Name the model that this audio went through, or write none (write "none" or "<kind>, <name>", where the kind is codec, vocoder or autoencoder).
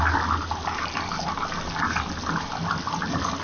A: none